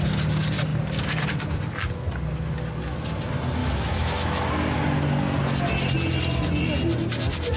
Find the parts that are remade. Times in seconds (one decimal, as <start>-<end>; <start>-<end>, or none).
3.6-4.5